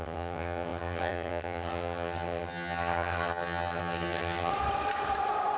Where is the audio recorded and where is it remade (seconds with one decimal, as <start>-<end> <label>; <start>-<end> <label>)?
0.0-4.5 remade; 4.5-5.6 recorded